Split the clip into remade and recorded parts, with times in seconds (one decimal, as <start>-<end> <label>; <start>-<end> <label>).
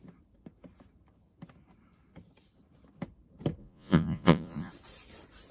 0.0-3.6 recorded; 3.6-4.7 remade; 4.7-5.5 recorded